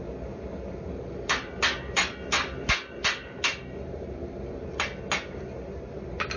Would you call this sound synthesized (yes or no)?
no